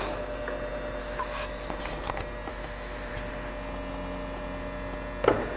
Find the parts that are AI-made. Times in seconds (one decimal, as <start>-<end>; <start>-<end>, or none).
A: 1.0-1.7; 2.5-3.1